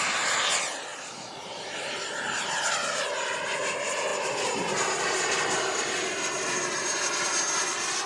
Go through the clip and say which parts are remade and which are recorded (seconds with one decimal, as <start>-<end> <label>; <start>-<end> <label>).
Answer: 0.0-0.9 recorded; 0.9-1.9 remade; 1.9-8.1 recorded